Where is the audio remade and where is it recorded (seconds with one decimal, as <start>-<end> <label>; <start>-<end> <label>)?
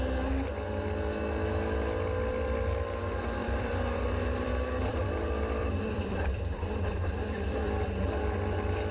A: 0.0-3.4 recorded; 3.4-4.5 remade; 4.5-4.9 recorded; 4.9-8.0 remade; 8.0-8.9 recorded